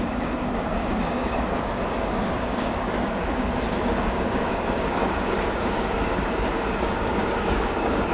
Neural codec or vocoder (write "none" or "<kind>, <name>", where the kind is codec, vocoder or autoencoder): codec, DAC